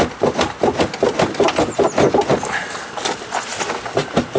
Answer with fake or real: real